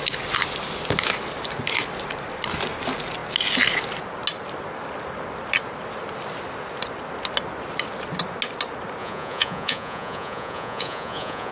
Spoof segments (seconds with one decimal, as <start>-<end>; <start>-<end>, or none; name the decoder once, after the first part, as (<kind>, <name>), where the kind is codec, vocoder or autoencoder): 9.0-11.5 (vocoder, Vocos)